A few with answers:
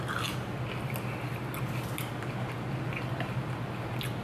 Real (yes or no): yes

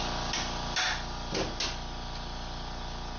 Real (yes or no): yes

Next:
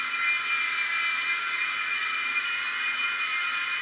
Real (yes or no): yes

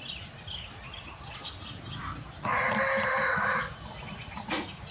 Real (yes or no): yes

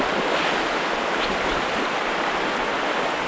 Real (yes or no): yes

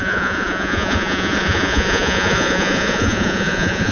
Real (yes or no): no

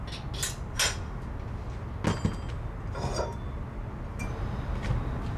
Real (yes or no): yes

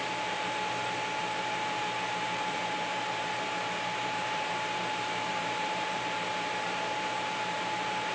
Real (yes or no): no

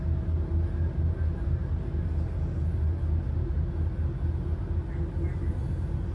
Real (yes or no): yes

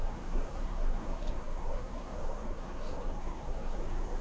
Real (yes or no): no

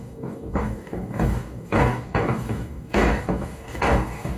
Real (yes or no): no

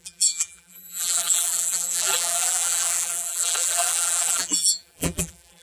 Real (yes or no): no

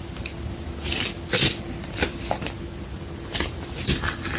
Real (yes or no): no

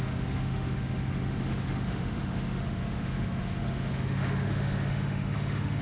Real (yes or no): no